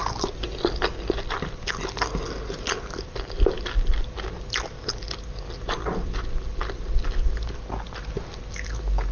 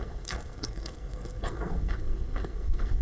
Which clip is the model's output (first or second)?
second